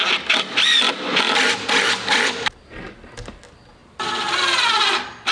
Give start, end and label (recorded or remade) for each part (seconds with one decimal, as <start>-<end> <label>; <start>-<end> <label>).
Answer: 0.0-5.3 recorded